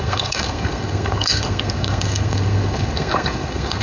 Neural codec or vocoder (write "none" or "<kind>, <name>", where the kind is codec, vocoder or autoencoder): codec, SNAC